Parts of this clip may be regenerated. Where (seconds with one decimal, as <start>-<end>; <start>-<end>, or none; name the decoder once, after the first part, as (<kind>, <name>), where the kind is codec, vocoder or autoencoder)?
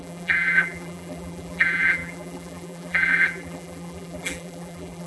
0.0-5.1 (vocoder, BigVGAN v2)